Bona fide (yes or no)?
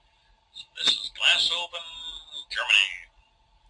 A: yes